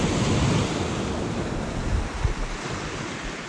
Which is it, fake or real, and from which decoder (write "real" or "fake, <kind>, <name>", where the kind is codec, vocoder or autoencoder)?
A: real